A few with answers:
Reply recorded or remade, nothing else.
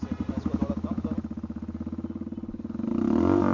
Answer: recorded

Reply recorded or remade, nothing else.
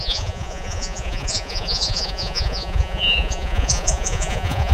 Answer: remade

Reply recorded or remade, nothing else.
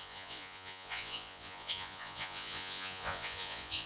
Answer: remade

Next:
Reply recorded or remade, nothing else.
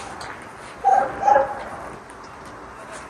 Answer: recorded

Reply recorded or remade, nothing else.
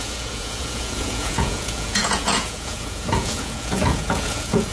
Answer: remade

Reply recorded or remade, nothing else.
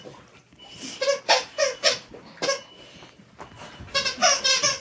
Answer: recorded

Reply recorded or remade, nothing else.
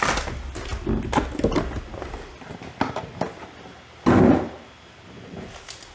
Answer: recorded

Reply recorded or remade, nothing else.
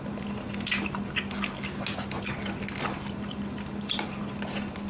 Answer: recorded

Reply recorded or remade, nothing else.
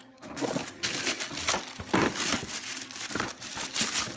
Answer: recorded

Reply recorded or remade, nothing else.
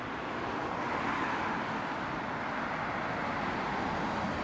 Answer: recorded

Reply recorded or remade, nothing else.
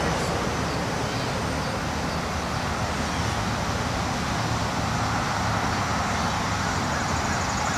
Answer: recorded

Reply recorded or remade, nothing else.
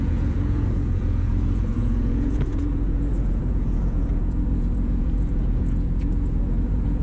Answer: remade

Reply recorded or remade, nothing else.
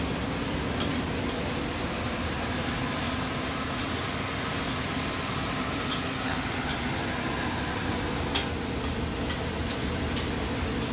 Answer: recorded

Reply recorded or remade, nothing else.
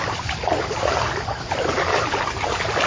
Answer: recorded